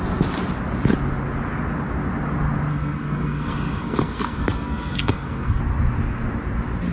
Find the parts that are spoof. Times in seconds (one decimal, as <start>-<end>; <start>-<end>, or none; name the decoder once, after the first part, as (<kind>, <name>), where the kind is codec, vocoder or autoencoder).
2.7-5.6 (codec, SNAC)